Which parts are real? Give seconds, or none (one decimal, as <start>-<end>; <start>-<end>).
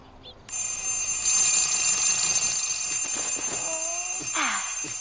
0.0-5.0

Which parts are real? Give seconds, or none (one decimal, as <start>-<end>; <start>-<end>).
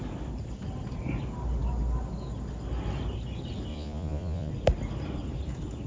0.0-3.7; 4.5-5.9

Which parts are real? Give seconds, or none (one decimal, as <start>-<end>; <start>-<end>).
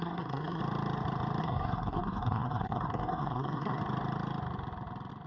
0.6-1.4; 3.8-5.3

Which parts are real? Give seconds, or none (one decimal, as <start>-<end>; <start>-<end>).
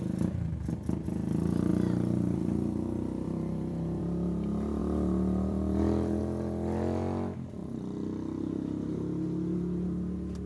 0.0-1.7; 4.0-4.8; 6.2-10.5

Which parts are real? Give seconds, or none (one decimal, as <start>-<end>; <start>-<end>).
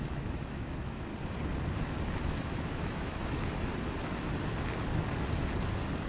1.1-2.3; 3.7-6.1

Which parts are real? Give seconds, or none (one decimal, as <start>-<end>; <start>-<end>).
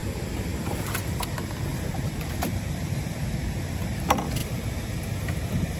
1.2-1.7; 3.0-4.4; 5.0-5.8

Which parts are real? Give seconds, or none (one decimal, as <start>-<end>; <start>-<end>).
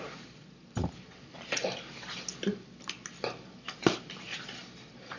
0.0-5.2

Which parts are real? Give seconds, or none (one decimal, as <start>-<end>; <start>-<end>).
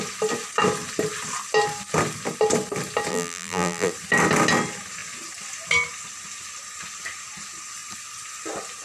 0.0-3.1; 3.9-8.8